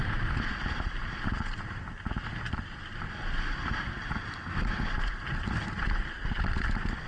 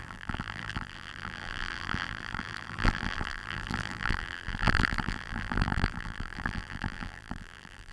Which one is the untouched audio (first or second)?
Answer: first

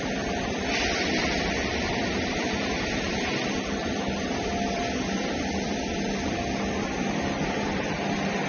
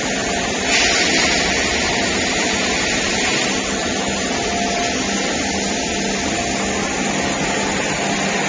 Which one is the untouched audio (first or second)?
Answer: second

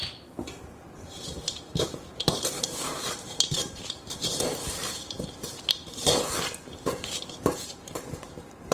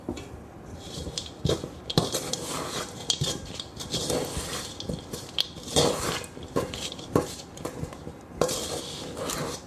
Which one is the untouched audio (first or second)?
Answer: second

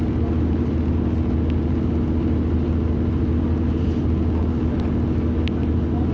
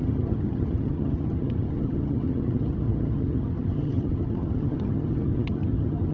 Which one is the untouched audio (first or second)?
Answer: first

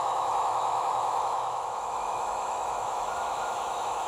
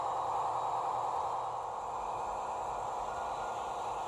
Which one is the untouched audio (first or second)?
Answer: second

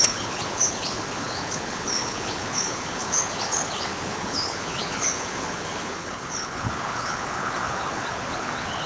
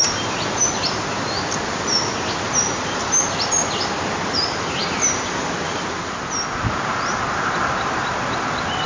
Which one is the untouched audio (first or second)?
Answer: second